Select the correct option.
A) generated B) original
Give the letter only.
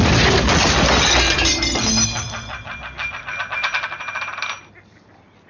B